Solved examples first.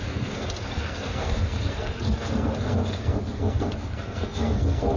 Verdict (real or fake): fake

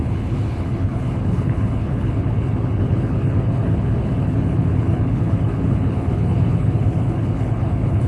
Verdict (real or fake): fake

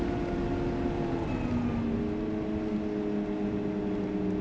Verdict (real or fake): real